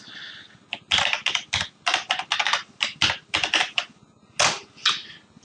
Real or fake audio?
real